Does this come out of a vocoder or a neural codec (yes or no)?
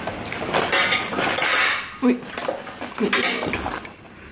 no